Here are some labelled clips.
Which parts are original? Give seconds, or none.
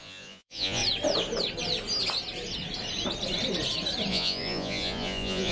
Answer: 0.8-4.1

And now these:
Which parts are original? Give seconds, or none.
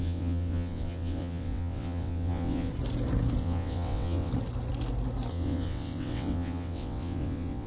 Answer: 2.7-3.4; 4.3-5.3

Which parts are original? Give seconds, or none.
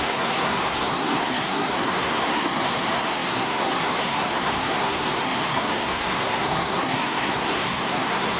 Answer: none